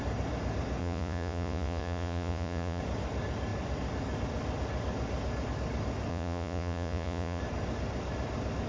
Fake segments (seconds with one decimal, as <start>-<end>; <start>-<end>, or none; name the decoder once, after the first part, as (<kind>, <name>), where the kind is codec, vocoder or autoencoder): 0.8-2.8 (vocoder, Vocos); 6.1-7.4